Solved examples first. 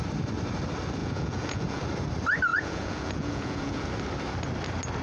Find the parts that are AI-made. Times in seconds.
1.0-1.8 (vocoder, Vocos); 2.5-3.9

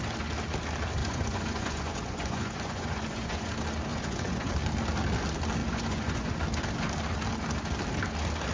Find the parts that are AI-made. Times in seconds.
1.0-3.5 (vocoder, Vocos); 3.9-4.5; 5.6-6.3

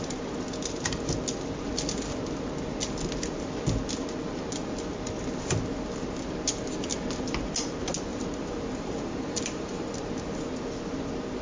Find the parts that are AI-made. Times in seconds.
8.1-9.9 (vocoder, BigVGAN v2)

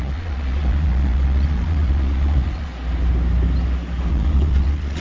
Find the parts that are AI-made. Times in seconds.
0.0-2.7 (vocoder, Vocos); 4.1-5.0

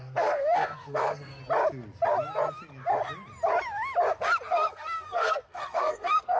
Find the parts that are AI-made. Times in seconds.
0.0-1.4 (codec, SNAC); 4.5-6.4

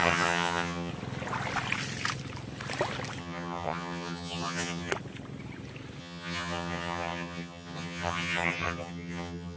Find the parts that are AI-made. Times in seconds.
0.0-0.9 (vocoder, HiFi-GAN); 3.2-4.9; 6.0-9.6

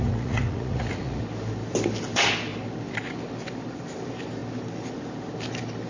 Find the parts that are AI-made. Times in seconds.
0.0-1.2 (vocoder, Vocos)

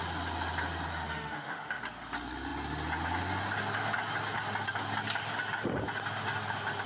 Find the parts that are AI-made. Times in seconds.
0.9-1.8 (autoencoder, DAC-VAE)